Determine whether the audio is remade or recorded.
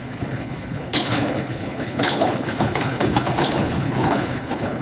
remade